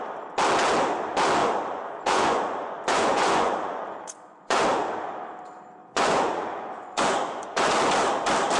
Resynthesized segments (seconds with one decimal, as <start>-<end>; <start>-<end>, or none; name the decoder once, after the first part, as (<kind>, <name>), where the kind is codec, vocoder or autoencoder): 1.4-4.6 (vocoder, Vocos); 5.8-7.7